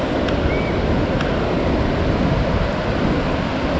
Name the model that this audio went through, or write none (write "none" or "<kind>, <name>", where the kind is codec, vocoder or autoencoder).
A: none